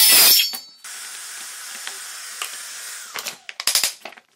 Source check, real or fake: real